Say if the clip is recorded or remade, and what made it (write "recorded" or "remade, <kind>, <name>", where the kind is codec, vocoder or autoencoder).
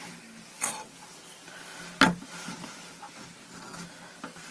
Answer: recorded